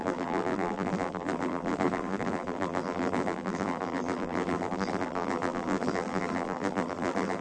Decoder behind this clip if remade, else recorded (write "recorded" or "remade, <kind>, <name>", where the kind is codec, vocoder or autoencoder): remade, vocoder, BigVGAN v2